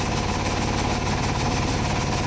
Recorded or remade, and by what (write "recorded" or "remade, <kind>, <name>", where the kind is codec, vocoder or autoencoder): recorded